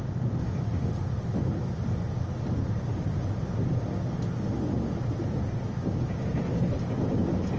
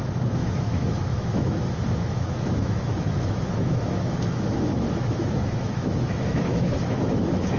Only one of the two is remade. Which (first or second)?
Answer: second